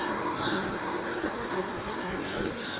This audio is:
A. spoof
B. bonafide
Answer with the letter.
A